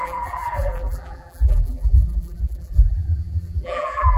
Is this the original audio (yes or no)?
no